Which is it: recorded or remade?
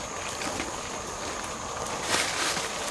recorded